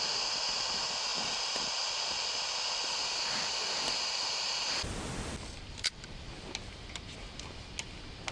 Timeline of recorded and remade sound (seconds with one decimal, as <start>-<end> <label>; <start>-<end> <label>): 0.0-8.3 recorded